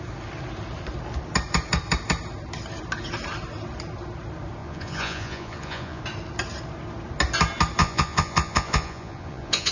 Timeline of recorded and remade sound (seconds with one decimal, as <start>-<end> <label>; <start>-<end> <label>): 0.0-4.6 recorded; 4.6-6.0 remade; 6.0-7.8 recorded; 7.8-9.7 remade